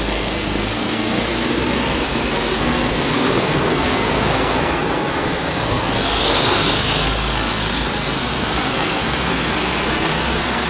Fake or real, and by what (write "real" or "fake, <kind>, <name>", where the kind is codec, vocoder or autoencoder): fake, codec, SNAC